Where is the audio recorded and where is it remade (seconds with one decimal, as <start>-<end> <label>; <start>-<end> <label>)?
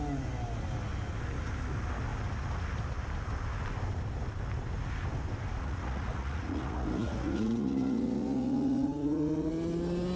0.0-5.6 recorded; 5.6-9.5 remade; 9.5-10.2 recorded